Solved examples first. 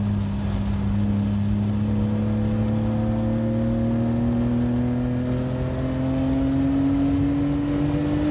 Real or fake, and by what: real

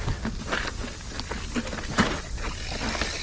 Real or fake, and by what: real